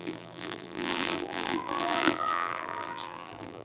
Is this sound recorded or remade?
remade